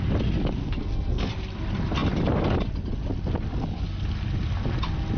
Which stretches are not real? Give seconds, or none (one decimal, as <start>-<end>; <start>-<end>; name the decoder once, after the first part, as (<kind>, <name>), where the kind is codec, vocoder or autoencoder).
0.6-1.3 (codec, SNAC)